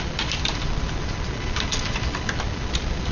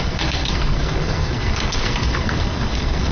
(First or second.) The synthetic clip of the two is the second